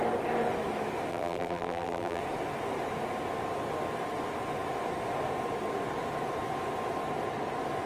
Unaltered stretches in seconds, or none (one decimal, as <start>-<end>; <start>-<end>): 0.0-1.1; 2.2-7.9